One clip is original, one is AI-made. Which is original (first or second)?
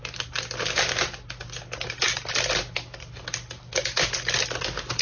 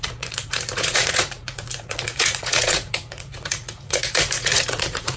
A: first